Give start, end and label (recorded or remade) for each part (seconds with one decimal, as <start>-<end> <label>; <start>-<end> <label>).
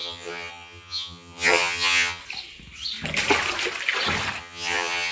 0.0-2.2 remade; 2.2-4.4 recorded; 4.4-5.1 remade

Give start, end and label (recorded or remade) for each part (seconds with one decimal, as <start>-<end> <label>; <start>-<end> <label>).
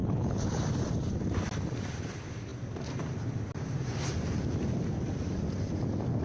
0.0-0.6 remade; 0.6-6.2 recorded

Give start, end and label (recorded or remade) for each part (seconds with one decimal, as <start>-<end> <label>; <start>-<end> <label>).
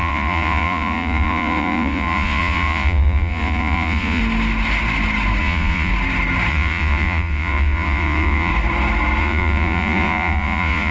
0.0-4.2 remade; 4.2-5.4 recorded; 5.4-5.9 remade; 5.9-6.5 recorded; 6.5-8.5 remade; 8.5-9.2 recorded; 9.2-10.9 remade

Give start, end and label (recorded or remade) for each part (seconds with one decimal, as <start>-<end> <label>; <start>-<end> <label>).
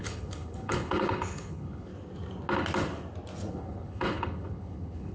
0.0-1.9 remade; 1.9-3.5 recorded; 3.5-5.1 remade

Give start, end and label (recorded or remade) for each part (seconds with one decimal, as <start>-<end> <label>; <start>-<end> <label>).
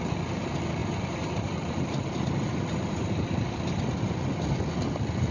0.0-0.8 recorded; 0.8-4.0 remade; 4.0-5.3 recorded